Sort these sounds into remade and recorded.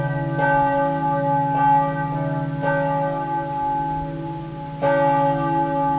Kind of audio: recorded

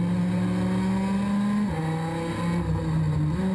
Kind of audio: recorded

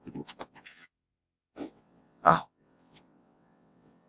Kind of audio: remade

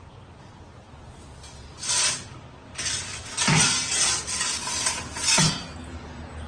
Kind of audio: recorded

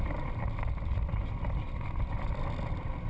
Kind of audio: recorded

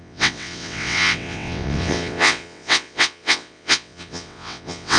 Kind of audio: remade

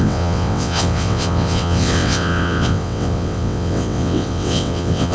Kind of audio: remade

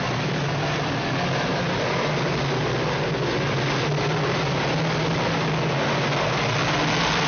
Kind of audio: recorded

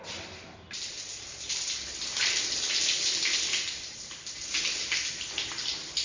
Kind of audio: recorded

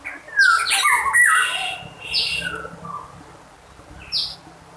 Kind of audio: recorded